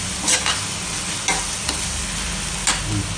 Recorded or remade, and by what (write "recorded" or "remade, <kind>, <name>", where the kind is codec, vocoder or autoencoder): recorded